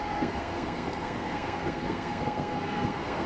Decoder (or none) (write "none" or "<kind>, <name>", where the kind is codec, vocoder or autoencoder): codec, SNAC